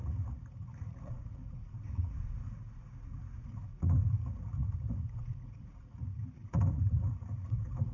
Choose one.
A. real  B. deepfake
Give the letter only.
B